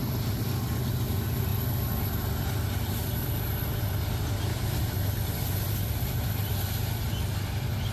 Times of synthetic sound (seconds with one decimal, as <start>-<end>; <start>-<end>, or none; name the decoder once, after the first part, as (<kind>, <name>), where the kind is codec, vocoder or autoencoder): 4.5-5.1 (vocoder, BigVGAN v2)